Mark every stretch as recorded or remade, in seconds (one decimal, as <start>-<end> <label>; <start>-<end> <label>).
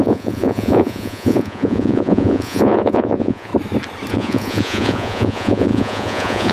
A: 0.0-3.5 remade; 3.5-4.1 recorded; 4.1-6.5 remade